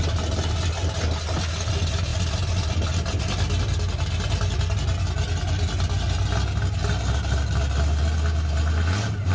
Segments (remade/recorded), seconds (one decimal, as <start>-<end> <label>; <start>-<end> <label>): 0.0-9.3 recorded